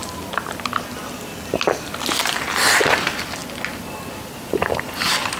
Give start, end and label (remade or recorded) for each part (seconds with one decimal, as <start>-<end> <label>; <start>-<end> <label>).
0.0-2.2 recorded; 2.2-3.4 remade; 3.4-4.4 recorded; 4.4-5.4 remade

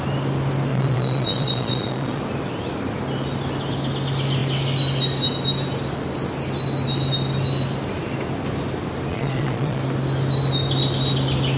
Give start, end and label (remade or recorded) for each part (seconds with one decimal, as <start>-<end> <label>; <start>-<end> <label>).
0.0-0.7 recorded; 0.7-2.2 remade; 2.2-9.1 recorded; 9.1-9.8 remade; 9.8-11.6 recorded